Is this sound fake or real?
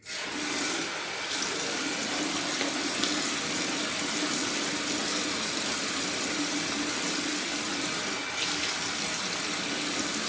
real